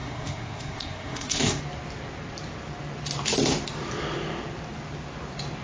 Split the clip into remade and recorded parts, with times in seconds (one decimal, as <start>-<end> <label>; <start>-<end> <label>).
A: 0.0-1.6 remade; 1.6-5.6 recorded